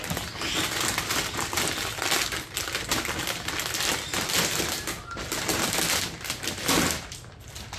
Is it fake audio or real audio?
real